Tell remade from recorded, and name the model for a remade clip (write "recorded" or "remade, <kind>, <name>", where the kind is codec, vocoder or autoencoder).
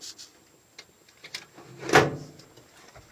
recorded